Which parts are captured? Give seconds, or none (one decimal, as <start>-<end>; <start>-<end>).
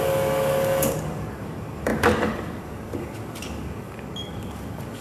none